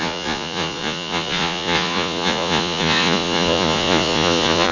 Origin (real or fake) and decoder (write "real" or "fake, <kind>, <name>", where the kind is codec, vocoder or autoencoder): fake, vocoder, Vocos